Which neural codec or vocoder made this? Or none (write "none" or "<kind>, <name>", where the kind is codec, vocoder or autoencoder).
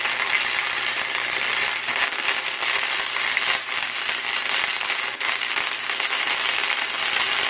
none